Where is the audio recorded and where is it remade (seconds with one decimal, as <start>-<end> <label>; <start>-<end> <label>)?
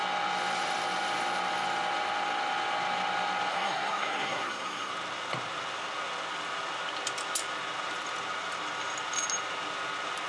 0.0-3.5 recorded; 3.5-4.9 remade; 4.9-10.3 recorded